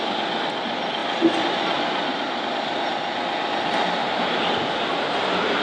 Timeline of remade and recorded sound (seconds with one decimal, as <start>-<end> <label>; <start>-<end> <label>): 0.0-5.6 recorded